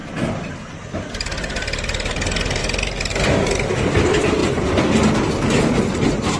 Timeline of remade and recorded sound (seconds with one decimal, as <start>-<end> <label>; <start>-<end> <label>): 0.0-6.4 recorded